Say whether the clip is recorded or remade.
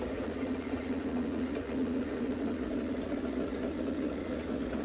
remade